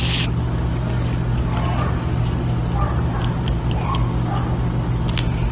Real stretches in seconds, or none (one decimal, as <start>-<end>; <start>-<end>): 0.0-1.3; 3.9-5.5